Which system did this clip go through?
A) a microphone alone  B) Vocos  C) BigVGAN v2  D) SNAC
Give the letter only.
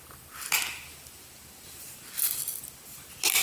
A